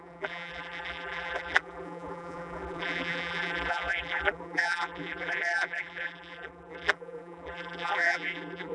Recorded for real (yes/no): no